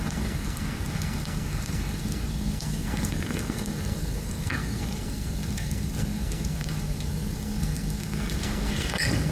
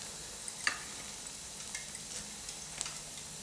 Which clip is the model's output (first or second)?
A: first